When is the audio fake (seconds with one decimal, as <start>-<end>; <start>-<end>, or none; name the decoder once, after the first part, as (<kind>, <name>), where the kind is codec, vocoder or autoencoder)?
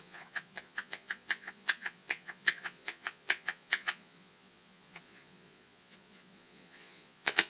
0.0-7.5 (vocoder, Vocos)